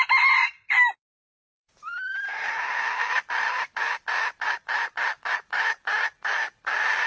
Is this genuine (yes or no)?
yes